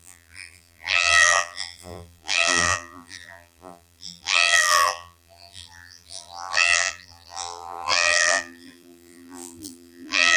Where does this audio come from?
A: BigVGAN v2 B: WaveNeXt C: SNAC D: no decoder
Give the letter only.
A